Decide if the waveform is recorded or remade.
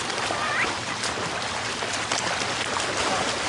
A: recorded